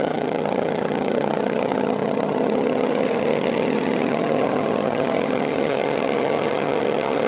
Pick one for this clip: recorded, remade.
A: remade